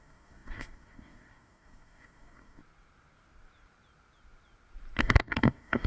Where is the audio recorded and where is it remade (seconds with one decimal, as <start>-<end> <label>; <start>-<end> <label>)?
0.0-2.6 remade; 2.6-5.0 recorded; 5.0-5.9 remade